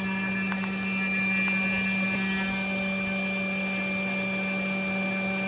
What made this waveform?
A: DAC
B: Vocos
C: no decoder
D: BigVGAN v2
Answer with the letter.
C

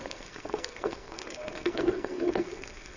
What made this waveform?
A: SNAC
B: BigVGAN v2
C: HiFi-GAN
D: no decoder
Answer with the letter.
A